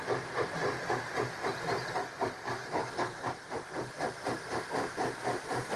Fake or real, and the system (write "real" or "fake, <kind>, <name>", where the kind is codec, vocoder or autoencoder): real